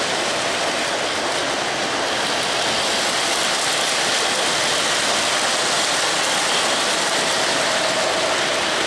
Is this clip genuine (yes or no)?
yes